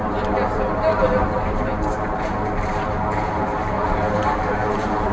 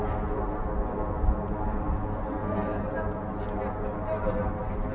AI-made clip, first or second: first